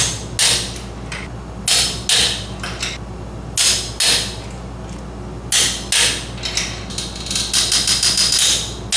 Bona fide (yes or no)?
yes